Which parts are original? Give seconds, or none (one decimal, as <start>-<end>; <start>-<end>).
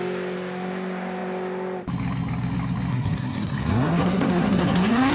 0.0-2.9